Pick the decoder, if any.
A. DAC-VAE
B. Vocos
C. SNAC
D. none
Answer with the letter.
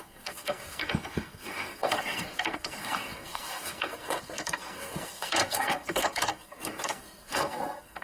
C